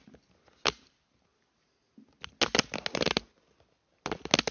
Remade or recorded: recorded